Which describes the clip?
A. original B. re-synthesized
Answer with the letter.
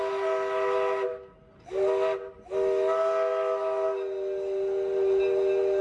A